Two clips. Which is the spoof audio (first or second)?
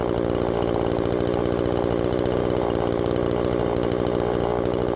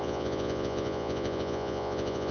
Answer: second